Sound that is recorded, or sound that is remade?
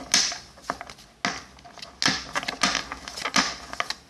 recorded